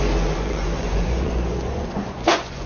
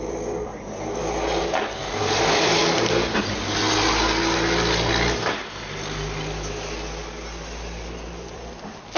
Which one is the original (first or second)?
second